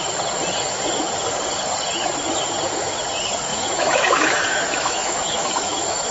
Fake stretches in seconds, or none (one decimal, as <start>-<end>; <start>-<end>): 3.5-6.1